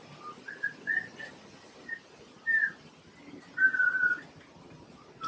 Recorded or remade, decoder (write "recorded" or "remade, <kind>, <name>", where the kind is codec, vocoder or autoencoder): recorded